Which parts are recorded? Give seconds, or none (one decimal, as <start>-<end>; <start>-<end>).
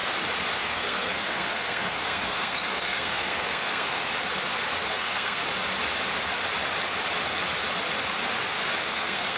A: 0.0-0.6; 4.1-4.9; 5.4-8.8